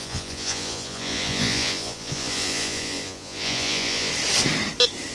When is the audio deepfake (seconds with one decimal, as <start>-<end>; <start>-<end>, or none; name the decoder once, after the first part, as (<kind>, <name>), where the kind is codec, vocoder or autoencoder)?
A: 0.0-4.1 (vocoder, Vocos)